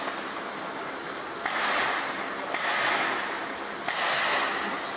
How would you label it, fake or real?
real